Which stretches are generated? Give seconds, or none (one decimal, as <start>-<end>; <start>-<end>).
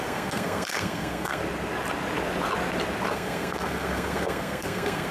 0.0-1.4; 3.1-5.1